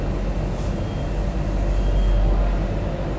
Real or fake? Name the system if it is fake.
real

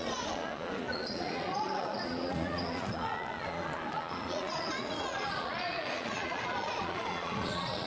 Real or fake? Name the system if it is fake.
fake, vocoder, Vocos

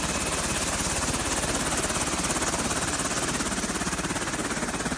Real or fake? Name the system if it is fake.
real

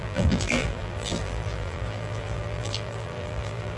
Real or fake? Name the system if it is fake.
fake, vocoder, BigVGAN v2